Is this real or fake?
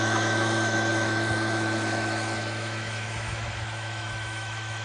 fake